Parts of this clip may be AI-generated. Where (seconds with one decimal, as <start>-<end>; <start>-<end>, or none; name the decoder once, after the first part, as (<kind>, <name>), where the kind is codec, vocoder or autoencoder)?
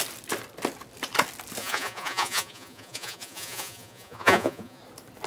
1.6-4.8 (vocoder, Vocos)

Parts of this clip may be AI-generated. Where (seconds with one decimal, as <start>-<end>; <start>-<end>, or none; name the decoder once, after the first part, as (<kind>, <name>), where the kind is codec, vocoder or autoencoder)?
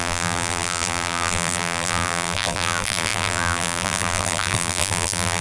0.0-5.4 (vocoder, BigVGAN v2)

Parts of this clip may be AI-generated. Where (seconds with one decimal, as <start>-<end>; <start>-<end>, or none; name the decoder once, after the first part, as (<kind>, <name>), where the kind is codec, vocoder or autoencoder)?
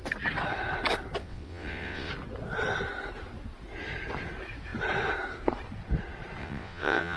1.2-2.1 (vocoder, WaveNeXt); 6.4-7.2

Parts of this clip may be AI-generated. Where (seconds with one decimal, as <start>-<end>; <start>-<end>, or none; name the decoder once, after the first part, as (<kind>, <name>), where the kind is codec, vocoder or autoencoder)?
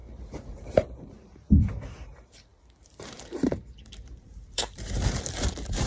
0.0-5.9 (vocoder, BigVGAN v2)